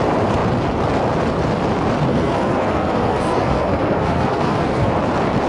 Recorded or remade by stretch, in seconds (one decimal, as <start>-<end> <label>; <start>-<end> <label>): 0.0-2.1 recorded; 2.1-4.9 remade; 4.9-5.5 recorded